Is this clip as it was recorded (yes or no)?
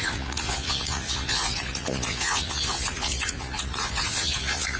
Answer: no